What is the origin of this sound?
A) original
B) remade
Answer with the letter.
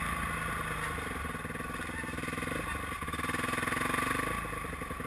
A